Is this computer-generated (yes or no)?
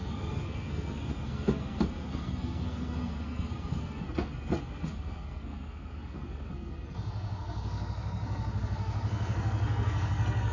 yes